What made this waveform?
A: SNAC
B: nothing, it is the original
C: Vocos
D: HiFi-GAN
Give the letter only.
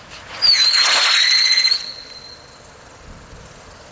B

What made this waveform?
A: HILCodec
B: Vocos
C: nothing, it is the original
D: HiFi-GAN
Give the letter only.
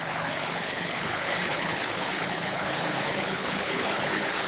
A